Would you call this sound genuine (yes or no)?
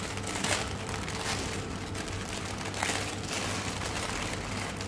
yes